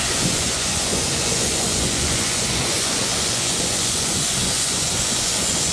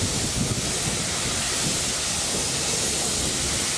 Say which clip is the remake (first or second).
first